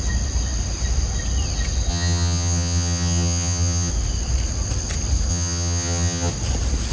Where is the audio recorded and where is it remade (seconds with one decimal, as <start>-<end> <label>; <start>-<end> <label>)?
0.0-1.9 recorded; 1.9-3.9 remade; 3.9-5.3 recorded; 5.3-6.3 remade; 6.3-6.9 recorded